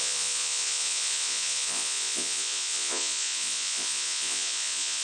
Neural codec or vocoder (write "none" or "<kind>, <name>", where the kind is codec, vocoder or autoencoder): vocoder, Vocos